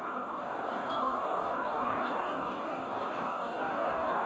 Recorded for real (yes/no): no